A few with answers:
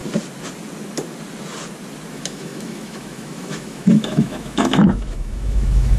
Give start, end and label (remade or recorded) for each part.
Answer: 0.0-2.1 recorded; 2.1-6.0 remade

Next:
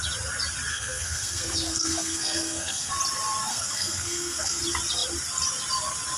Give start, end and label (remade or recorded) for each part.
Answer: 0.0-0.7 recorded; 0.7-2.9 remade; 2.9-3.5 recorded; 3.5-4.6 remade; 4.6-6.2 recorded

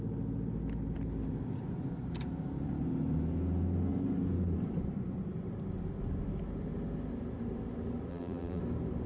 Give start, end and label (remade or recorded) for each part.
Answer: 0.0-8.1 recorded; 8.1-8.6 remade; 8.6-9.1 recorded

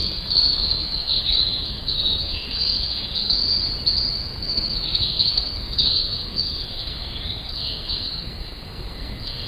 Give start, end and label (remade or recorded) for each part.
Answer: 0.0-3.4 remade; 3.4-4.1 recorded; 4.1-9.5 remade

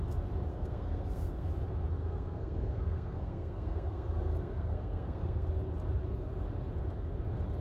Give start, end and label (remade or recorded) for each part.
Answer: 0.0-0.5 recorded; 0.5-1.5 remade; 1.5-2.0 recorded; 2.0-5.5 remade; 5.5-7.6 recorded

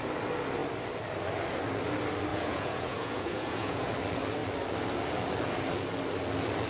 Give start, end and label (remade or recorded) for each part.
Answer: 0.0-2.3 recorded; 2.3-3.9 remade; 3.9-6.7 recorded

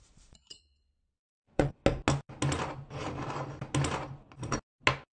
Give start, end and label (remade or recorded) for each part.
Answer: 0.0-1.8 remade; 1.8-5.1 recorded

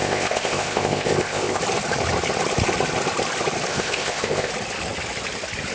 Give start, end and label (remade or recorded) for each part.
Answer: 0.0-1.6 remade; 1.6-3.7 recorded; 3.7-4.5 remade; 4.5-5.7 recorded